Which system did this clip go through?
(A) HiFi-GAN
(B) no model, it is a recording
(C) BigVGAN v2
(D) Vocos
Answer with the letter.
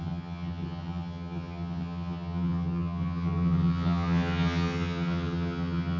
A